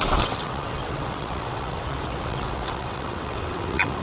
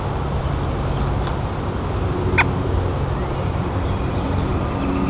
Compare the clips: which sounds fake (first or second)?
first